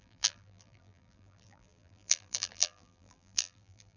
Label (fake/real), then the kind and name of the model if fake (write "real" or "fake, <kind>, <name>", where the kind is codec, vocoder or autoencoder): fake, vocoder, BigVGAN v2